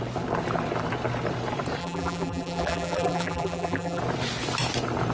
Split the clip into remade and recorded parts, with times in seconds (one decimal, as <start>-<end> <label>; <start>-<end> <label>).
0.0-1.8 recorded; 1.8-4.0 remade; 4.0-5.1 recorded